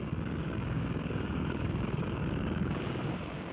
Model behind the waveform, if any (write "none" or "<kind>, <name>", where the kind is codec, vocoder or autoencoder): codec, DAC